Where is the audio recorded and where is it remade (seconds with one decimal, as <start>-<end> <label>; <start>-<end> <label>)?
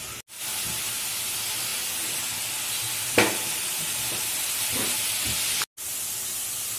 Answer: 0.0-6.8 recorded